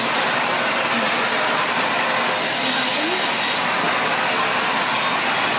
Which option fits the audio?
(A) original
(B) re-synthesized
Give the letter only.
A